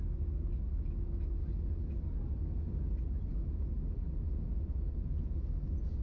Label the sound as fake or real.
real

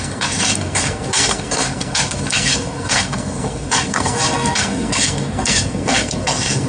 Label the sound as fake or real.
fake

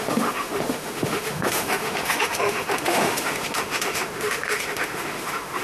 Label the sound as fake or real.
fake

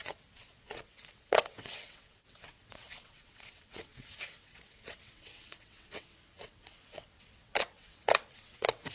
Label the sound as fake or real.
fake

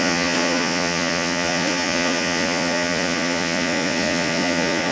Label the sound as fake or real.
fake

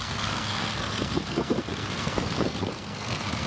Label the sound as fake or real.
fake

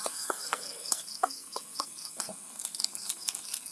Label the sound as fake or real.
fake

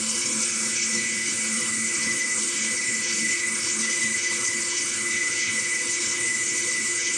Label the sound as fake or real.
fake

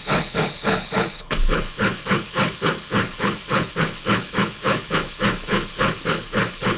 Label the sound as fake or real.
fake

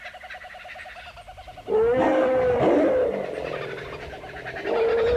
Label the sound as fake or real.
real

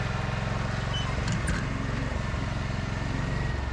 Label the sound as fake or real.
real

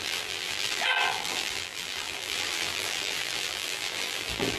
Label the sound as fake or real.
fake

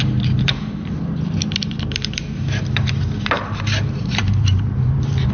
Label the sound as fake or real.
fake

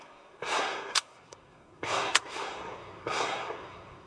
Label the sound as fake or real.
fake